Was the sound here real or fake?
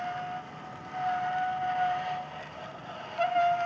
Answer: real